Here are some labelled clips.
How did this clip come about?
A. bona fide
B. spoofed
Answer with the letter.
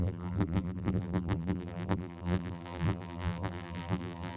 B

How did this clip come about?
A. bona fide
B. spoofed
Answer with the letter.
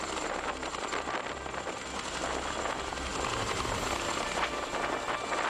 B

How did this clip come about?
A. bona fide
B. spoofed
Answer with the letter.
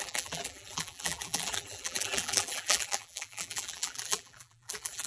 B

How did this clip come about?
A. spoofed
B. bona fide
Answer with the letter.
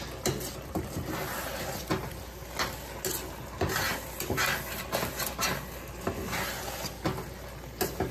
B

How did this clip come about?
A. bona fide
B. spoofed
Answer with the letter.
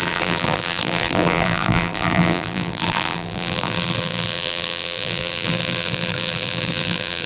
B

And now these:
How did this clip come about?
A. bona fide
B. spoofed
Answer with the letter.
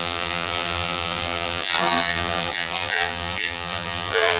B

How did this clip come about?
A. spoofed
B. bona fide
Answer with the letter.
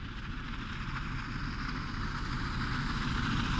B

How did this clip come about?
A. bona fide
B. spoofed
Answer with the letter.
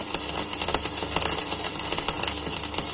B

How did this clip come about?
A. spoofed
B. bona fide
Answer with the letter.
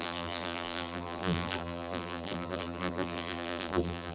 A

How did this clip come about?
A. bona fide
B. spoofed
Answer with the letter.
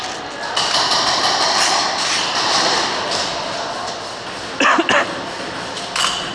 A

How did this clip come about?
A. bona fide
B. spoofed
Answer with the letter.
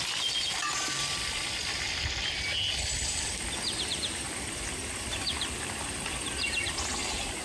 A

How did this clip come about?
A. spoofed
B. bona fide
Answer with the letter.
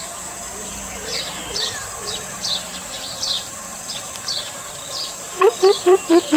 A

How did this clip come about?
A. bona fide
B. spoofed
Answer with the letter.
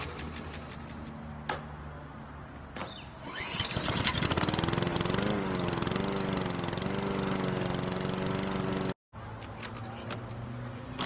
A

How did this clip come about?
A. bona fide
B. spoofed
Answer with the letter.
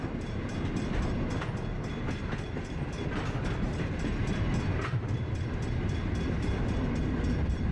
B